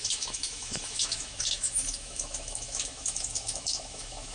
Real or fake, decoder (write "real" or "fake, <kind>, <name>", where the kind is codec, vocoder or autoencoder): fake, autoencoder, DAC-VAE